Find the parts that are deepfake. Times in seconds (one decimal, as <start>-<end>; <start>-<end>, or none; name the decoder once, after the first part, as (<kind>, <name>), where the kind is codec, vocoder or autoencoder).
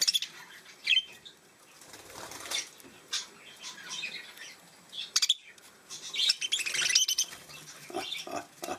none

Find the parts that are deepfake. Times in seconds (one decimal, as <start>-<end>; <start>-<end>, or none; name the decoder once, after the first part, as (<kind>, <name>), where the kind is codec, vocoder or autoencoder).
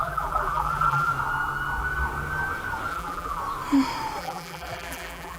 0.0-1.1 (vocoder, BigVGAN v2); 2.9-3.4; 4.2-5.4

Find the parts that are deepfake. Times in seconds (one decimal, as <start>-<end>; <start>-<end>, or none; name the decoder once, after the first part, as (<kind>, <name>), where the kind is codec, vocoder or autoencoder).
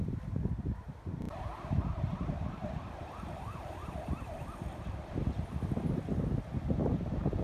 1.3-5.7 (vocoder, BigVGAN v2)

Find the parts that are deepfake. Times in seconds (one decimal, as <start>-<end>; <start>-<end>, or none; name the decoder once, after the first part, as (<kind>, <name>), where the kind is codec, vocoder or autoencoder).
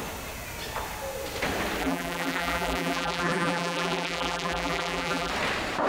1.8-5.3 (vocoder, BigVGAN v2)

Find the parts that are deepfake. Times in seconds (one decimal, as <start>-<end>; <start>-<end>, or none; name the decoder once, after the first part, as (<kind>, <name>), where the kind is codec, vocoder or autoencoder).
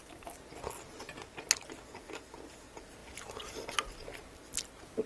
none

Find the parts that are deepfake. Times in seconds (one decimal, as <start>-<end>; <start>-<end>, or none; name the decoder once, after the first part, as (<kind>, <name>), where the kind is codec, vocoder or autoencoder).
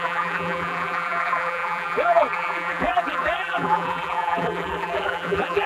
0.0-5.7 (vocoder, BigVGAN v2)